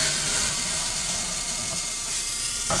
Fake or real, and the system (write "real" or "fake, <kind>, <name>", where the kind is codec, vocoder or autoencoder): real